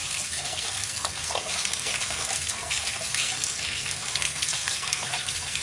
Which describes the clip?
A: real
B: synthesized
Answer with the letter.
B